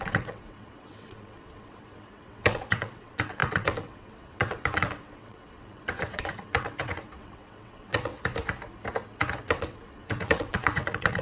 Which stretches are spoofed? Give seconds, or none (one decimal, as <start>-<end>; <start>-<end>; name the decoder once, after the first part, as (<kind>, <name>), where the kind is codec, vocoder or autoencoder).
0.0-8.1 (vocoder, WaveNeXt); 9.4-11.2